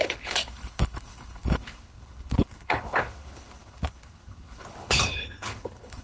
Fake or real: fake